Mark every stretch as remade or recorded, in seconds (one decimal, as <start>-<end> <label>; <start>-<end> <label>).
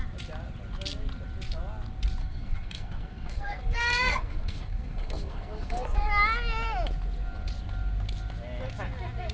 0.0-2.2 recorded; 2.2-6.1 remade; 6.1-9.3 recorded